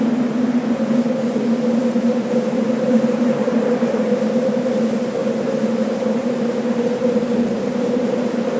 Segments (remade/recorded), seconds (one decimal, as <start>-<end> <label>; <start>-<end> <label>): 0.0-1.8 recorded; 1.8-4.0 remade; 4.0-5.2 recorded; 5.2-8.0 remade; 8.0-8.6 recorded